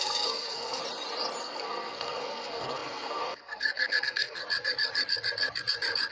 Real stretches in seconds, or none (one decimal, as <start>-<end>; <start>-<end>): 0.8-1.4; 4.4-6.1